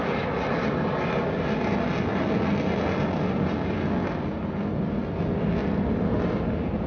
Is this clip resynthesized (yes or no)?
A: no